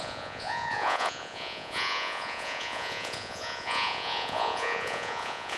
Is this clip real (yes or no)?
no